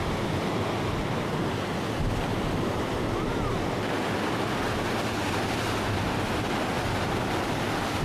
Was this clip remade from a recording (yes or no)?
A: no